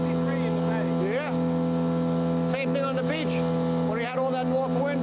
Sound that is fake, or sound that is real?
real